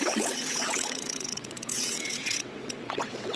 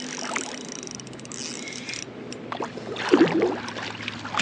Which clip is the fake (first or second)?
first